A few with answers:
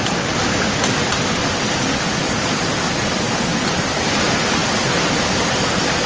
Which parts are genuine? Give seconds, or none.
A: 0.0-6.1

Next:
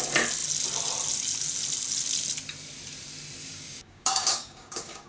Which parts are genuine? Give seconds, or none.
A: 0.0-3.4

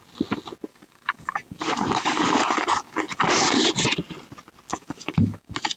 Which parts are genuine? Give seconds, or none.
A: 0.0-0.7; 3.5-4.7

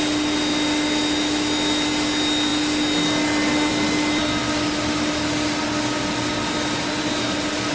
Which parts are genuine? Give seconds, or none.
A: 0.0-7.7

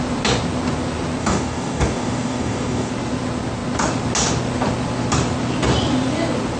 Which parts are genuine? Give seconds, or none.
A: 0.0-1.2; 2.9-6.6

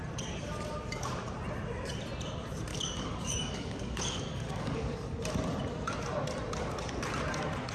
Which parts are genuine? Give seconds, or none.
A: 0.0-2.7; 5.2-7.7

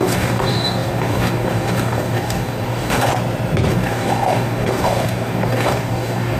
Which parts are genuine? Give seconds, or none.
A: 3.1-3.7

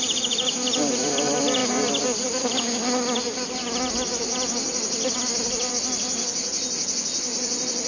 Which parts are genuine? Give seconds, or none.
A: 0.0-7.9